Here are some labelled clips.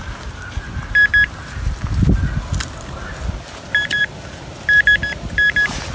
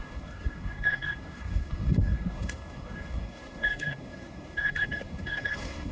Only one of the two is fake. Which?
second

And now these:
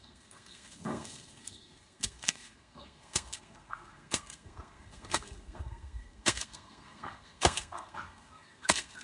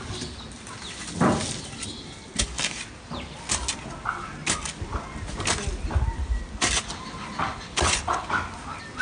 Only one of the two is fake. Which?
first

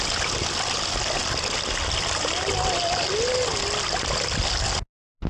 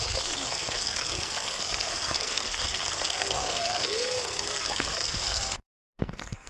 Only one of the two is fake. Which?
second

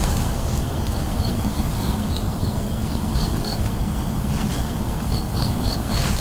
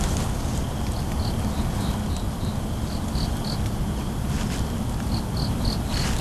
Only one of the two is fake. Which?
first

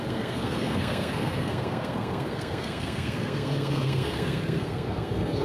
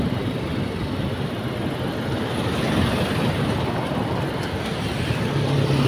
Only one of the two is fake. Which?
first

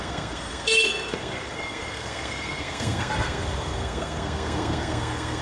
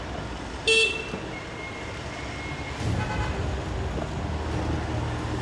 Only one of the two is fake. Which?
first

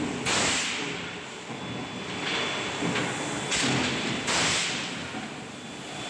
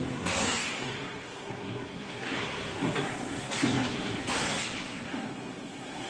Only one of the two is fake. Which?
second